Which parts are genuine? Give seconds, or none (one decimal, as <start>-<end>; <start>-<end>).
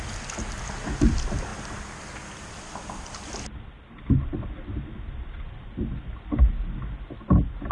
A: 0.0-7.7